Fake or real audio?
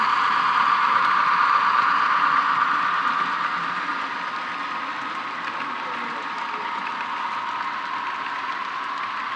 real